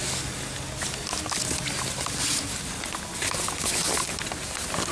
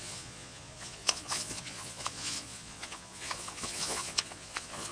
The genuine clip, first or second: first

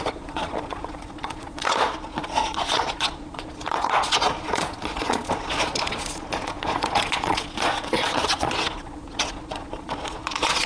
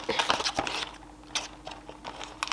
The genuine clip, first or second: second